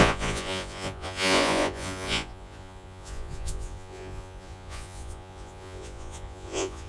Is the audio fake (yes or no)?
yes